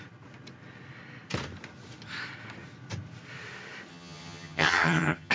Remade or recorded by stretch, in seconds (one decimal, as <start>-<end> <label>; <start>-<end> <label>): 0.0-3.9 recorded; 3.9-5.3 remade